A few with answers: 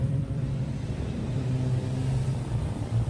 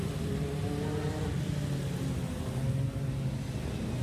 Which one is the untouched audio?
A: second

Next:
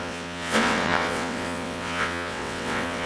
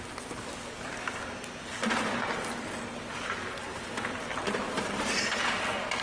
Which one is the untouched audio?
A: second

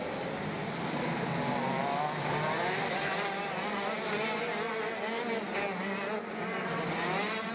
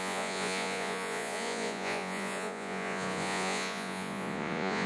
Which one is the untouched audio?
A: first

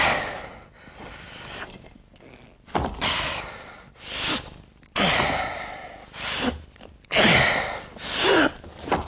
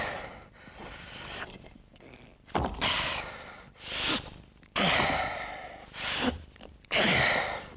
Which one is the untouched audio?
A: first